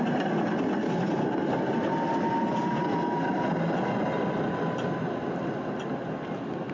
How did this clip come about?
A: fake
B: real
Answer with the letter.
B